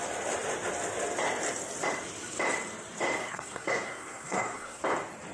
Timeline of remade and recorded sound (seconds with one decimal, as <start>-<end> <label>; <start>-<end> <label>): 0.0-3.2 recorded; 3.2-4.8 remade; 4.8-5.3 recorded